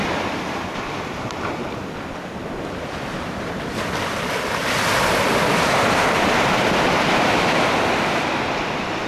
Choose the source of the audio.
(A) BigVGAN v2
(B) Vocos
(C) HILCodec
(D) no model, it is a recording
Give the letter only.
A